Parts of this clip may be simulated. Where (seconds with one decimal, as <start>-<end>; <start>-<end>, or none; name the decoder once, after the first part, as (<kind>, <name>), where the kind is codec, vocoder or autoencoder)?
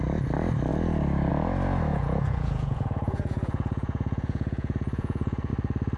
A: 1.9-5.5 (vocoder, Vocos)